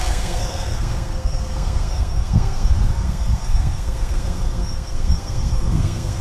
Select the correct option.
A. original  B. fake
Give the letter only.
B